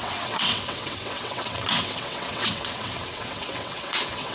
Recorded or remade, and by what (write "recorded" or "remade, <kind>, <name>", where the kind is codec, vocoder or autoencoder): remade, vocoder, WaveNeXt